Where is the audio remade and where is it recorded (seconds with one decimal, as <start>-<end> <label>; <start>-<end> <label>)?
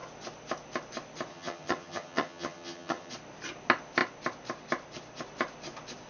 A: 0.0-1.3 recorded; 1.3-3.1 remade; 3.1-6.1 recorded